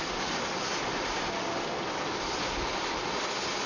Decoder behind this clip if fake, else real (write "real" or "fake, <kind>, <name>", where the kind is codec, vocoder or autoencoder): real